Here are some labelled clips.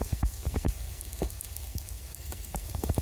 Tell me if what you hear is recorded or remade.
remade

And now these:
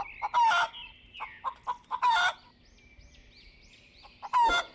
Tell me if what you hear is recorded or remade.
recorded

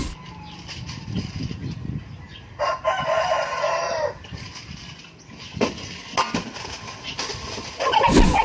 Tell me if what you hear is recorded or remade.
recorded